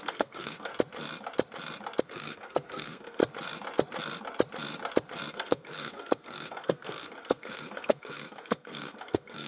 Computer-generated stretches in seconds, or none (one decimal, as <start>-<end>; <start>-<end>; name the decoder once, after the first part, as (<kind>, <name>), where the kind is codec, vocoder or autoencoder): 0.0-0.7 (codec, SNAC); 2.0-3.2; 5.3-9.5